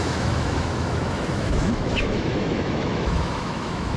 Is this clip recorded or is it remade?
remade